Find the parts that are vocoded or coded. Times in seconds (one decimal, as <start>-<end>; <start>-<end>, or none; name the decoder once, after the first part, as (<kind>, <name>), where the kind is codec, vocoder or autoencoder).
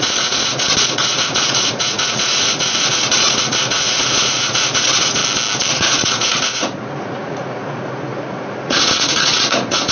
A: 0.0-5.2 (vocoder, Vocos); 5.7-9.9